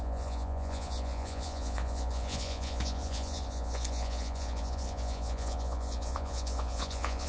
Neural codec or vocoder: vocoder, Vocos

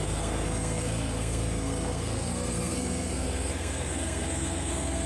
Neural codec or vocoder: codec, SNAC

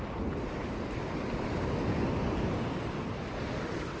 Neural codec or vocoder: none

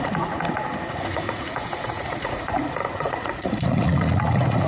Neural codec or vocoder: vocoder, Vocos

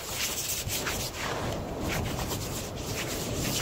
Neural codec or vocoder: none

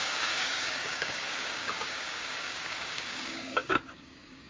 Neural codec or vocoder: codec, DAC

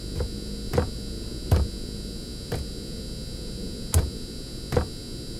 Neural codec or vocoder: none